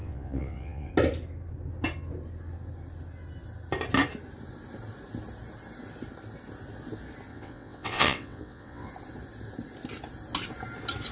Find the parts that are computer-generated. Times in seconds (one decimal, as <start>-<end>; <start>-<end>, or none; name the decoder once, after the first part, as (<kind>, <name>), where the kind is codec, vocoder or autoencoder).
0.0-0.9 (vocoder, WaveNeXt); 7.3-8.9